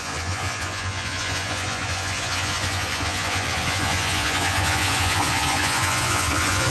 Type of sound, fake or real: fake